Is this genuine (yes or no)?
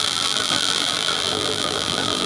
no